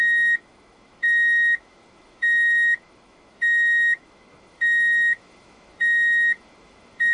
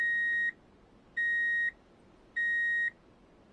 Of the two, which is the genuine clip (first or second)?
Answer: second